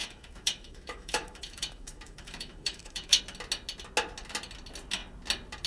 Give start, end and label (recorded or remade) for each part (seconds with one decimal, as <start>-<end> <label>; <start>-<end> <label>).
0.0-3.2 remade; 3.2-5.7 recorded